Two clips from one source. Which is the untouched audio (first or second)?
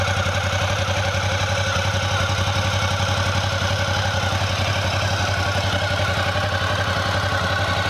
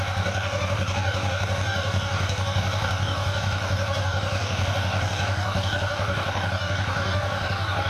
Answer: first